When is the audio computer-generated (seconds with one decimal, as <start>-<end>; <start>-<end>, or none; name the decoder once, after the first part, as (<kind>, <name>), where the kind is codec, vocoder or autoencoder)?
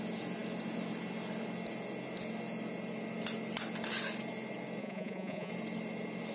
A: 4.8-5.5 (vocoder, Vocos)